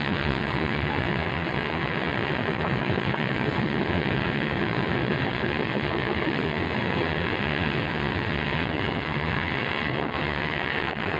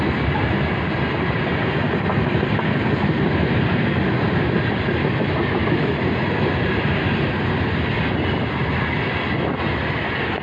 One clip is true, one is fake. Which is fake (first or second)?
first